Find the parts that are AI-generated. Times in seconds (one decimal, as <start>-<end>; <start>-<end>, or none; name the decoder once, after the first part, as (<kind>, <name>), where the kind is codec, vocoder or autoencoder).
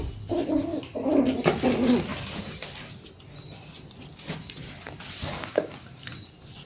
5.3-5.9 (codec, DAC)